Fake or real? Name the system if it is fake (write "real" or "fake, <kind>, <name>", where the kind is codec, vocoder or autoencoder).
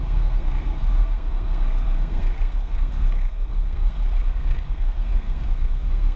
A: fake, codec, SNAC